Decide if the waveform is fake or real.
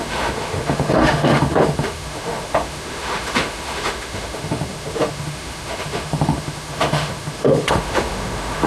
fake